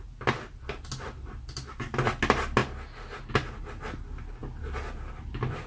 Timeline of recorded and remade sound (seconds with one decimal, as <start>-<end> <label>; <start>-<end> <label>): 0.0-5.7 recorded